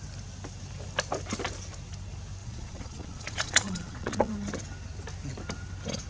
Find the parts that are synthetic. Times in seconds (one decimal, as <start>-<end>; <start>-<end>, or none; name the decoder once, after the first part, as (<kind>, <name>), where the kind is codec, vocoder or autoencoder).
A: 2.4-4.3 (vocoder, Vocos)